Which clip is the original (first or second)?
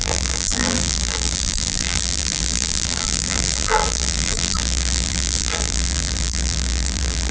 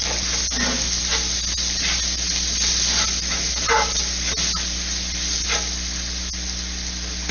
second